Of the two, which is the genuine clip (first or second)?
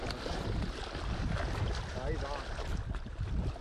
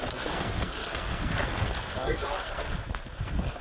first